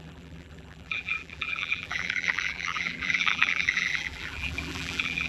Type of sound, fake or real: fake